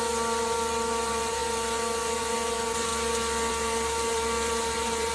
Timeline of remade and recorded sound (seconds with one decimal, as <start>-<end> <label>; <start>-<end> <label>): 0.0-2.9 remade; 2.9-3.5 recorded; 3.5-5.1 remade